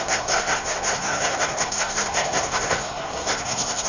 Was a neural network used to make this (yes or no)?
yes